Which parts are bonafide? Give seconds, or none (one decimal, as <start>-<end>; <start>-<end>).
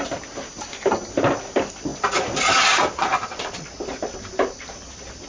0.0-5.3